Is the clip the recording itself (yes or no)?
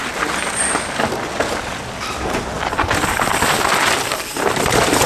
yes